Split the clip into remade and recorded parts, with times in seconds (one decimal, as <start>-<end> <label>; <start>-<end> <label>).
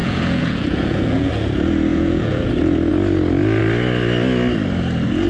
0.0-1.3 remade; 1.3-1.9 recorded; 1.9-2.5 remade; 2.5-5.3 recorded